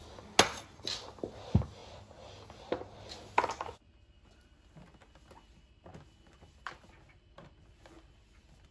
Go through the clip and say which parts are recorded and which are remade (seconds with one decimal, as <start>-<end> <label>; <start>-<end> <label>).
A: 0.0-8.7 recorded

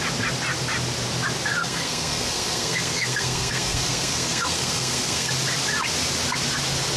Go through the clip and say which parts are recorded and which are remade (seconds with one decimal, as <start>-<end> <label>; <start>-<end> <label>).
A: 0.0-1.6 recorded; 1.6-5.3 remade; 5.3-7.0 recorded

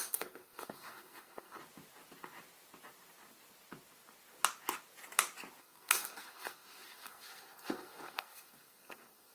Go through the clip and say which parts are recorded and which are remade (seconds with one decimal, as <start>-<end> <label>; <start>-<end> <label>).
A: 0.0-1.6 remade; 1.6-5.6 recorded; 5.6-9.3 remade

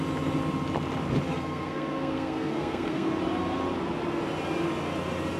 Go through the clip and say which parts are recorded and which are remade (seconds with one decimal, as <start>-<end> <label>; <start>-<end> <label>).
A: 0.0-1.3 recorded; 1.3-3.1 remade; 3.1-5.4 recorded

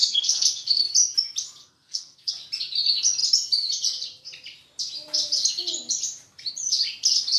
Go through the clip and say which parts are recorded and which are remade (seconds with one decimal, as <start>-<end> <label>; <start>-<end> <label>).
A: 0.0-0.9 remade; 0.9-1.6 recorded; 1.6-2.3 remade; 2.3-7.4 recorded

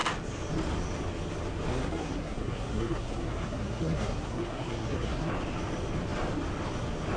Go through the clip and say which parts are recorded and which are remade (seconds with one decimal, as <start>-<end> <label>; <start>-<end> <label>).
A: 0.0-1.7 recorded; 1.7-5.3 remade; 5.3-7.2 recorded

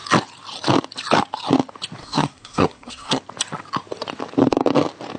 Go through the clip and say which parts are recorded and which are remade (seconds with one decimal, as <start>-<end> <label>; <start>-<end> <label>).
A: 0.0-2.0 recorded; 2.0-3.2 remade; 3.2-5.2 recorded

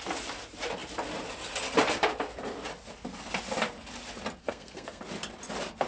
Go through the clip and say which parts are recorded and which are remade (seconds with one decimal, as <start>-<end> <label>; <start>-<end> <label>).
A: 0.0-4.4 recorded; 4.4-5.0 remade; 5.0-5.9 recorded